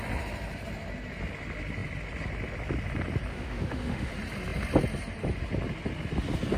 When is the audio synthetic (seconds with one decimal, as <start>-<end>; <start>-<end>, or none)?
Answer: 3.3-4.1